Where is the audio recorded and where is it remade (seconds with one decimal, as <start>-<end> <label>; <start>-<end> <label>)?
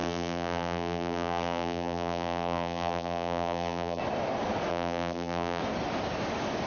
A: 0.0-4.0 remade; 4.0-4.7 recorded; 4.7-5.6 remade; 5.6-6.7 recorded